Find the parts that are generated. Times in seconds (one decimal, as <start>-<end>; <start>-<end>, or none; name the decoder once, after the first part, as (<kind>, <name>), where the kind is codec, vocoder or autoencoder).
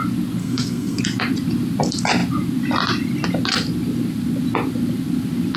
0.4-1.0 (codec, SNAC)